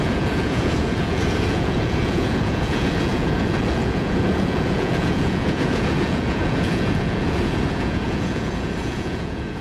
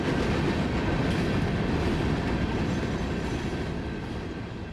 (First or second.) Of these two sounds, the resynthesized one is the first